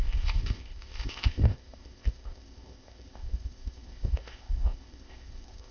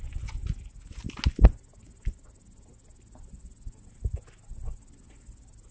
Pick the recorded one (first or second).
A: second